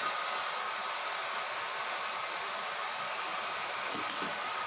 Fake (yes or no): no